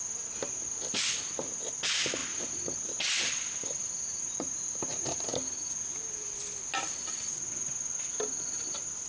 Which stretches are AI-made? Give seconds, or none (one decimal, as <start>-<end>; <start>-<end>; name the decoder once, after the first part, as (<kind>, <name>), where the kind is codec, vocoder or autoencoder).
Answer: none

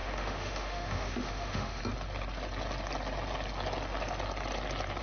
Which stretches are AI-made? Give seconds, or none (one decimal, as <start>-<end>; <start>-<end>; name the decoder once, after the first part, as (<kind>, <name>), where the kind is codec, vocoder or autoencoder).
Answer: 0.0-1.8 (autoencoder, DAC-VAE)

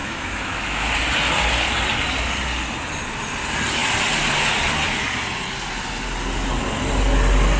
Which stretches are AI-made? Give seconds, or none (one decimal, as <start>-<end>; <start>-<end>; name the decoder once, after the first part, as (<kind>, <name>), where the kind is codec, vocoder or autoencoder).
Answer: 0.0-0.9 (autoencoder, DAC-VAE)

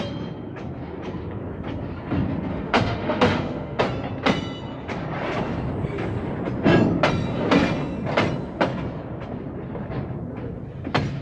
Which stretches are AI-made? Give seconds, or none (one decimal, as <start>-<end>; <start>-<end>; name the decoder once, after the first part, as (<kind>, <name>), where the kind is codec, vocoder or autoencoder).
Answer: 2.5-3.8 (autoencoder, DAC-VAE)

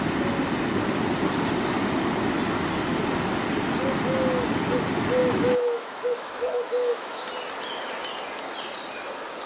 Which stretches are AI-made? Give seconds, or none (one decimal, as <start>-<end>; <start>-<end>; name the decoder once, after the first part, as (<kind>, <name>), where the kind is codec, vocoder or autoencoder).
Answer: 5.2-7.3 (autoencoder, DAC-VAE)

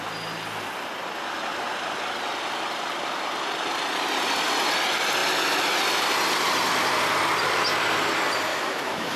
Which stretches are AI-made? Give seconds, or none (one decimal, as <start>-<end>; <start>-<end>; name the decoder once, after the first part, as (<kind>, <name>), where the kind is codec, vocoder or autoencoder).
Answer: 8.5-9.2 (autoencoder, DAC-VAE)

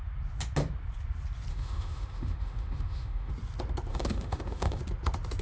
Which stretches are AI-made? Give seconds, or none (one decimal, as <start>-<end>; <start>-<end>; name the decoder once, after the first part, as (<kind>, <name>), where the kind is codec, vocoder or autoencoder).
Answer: 1.5-3.3 (autoencoder, DAC-VAE); 3.9-4.8